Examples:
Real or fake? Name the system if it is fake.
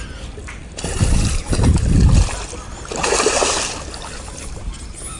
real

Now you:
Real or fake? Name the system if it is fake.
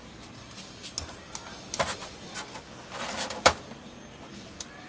real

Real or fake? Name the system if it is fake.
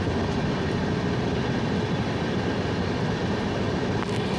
real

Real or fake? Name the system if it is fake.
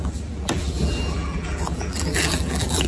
fake, vocoder, BigVGAN v2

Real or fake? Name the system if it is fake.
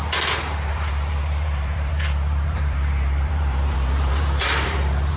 fake, vocoder, BigVGAN v2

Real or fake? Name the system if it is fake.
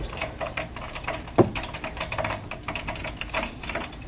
fake, vocoder, BigVGAN v2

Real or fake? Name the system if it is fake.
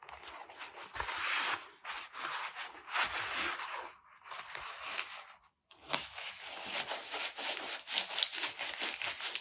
real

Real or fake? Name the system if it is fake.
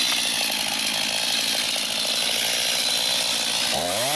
real